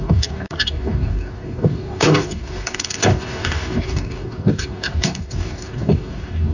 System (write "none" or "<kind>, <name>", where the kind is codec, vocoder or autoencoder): codec, DAC